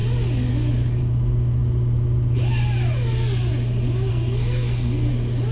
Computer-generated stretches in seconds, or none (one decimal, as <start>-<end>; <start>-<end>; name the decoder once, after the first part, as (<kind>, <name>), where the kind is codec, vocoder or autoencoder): 4.1-5.1 (codec, SNAC)